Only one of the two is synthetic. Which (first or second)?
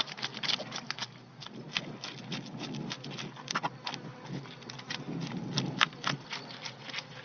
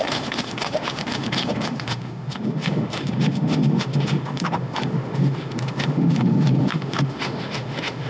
second